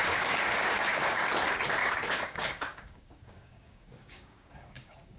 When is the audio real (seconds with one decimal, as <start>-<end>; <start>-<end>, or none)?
1.3-1.8